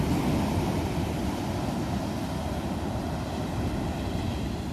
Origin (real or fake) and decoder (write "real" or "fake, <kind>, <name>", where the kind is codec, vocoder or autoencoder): real